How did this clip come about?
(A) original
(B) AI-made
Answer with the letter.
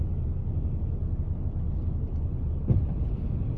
A